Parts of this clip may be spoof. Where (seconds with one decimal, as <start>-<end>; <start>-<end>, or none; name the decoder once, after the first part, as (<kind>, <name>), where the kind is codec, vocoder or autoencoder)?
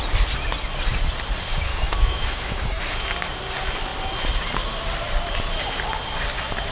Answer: 1.7-2.8 (autoencoder, DAC-VAE)